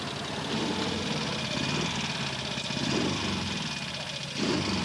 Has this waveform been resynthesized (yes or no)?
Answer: no